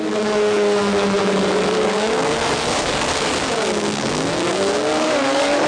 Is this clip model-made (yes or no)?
yes